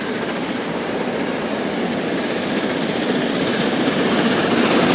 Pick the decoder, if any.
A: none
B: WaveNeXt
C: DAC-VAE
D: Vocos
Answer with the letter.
A